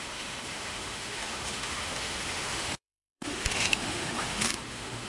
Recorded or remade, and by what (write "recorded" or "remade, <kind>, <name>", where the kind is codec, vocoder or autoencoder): remade, autoencoder, DAC-VAE